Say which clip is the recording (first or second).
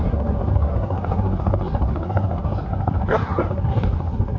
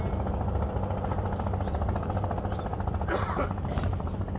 second